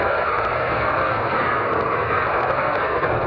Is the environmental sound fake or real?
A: fake